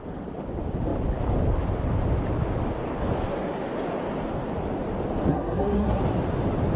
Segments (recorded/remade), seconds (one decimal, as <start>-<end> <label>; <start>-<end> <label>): 0.0-5.3 recorded; 5.3-6.0 remade; 6.0-6.8 recorded